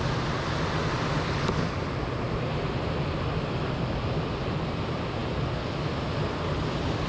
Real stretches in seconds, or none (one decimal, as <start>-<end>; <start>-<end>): 0.0-7.1